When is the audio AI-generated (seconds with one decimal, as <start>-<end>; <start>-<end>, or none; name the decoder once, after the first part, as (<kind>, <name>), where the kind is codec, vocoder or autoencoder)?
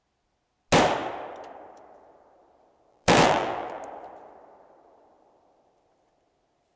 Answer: 2.9-3.8 (vocoder, BigVGAN v2)